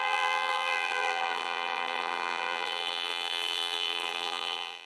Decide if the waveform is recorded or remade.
remade